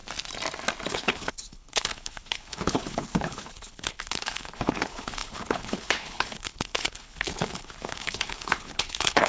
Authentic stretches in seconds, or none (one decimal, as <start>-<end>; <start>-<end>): 0.0-0.9